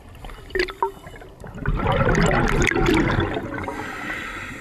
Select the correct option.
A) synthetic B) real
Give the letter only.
B